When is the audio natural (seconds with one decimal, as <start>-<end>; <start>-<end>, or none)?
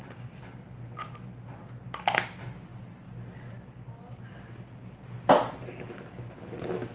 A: 0.0-6.9